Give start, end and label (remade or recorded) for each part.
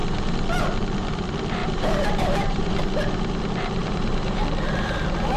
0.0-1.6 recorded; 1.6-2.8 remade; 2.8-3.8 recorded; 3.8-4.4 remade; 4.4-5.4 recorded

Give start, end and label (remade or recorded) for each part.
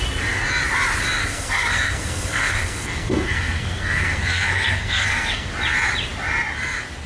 0.0-1.2 recorded; 1.2-5.5 remade; 5.5-7.1 recorded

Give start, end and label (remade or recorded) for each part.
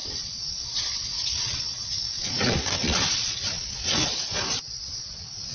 0.0-5.5 remade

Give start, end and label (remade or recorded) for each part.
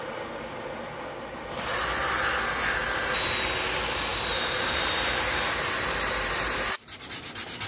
0.0-4.1 recorded; 4.1-7.1 remade; 7.1-7.7 recorded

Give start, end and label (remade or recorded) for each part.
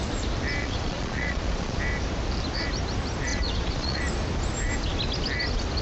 0.0-0.6 recorded; 0.6-1.8 remade; 1.8-3.3 recorded; 3.3-4.0 remade; 4.0-5.8 recorded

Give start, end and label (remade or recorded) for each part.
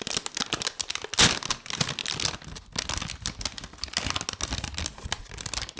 0.0-5.8 recorded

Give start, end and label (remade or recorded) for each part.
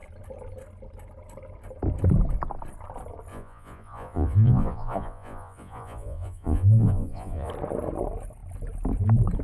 0.0-3.3 recorded; 3.3-7.5 remade; 7.5-9.4 recorded